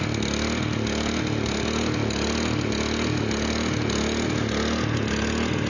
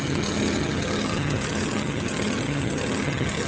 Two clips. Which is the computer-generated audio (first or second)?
second